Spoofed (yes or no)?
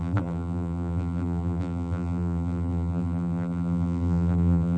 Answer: yes